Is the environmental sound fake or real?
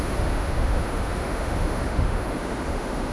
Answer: fake